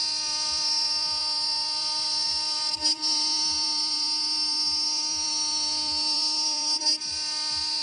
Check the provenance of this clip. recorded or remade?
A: remade